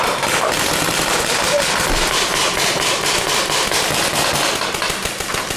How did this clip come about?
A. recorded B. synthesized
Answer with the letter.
A